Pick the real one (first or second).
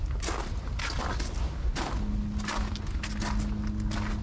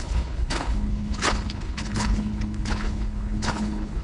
first